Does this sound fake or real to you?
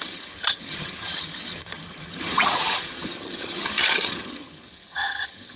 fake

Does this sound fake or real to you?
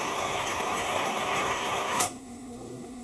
fake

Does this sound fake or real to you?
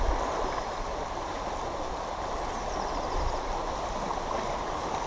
real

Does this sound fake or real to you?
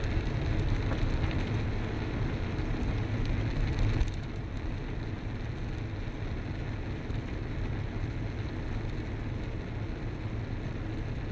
real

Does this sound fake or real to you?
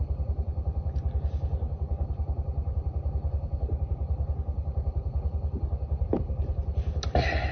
real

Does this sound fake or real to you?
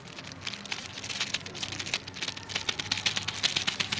real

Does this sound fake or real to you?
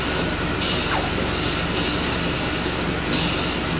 real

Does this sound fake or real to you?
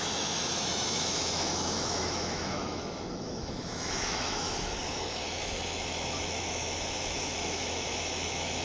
fake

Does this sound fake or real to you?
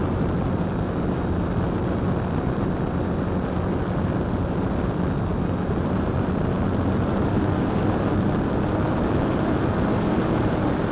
real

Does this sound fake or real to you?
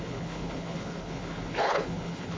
fake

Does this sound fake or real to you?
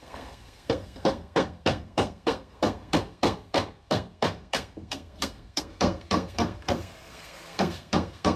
fake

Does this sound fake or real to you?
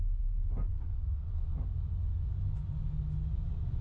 real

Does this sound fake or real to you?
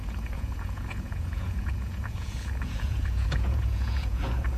fake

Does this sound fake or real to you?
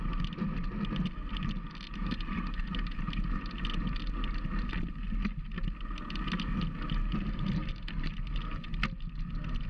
real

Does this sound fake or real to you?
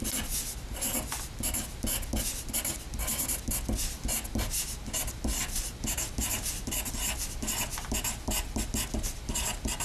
real